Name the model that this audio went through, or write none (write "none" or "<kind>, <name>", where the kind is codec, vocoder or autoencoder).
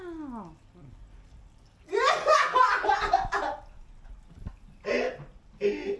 none